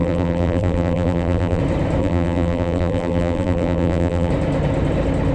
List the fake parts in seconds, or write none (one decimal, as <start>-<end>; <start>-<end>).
0.0-1.6; 2.0-4.3

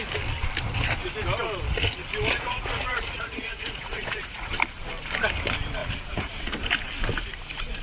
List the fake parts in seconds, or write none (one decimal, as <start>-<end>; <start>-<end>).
2.3-4.5; 5.8-6.5

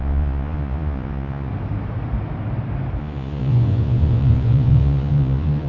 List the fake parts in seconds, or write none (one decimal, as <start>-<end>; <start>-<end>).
0.0-1.5; 3.0-5.7

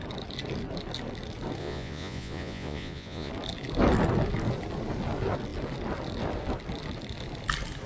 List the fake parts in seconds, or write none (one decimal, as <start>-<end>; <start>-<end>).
1.6-3.3